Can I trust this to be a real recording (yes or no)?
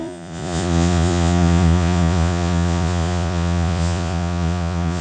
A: no